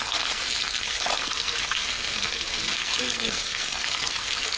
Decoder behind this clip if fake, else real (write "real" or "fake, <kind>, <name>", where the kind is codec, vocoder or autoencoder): fake, codec, SNAC